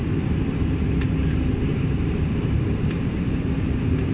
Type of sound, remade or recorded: remade